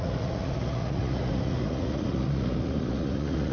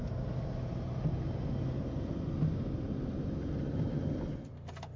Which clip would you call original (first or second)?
second